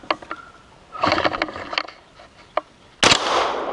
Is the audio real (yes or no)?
yes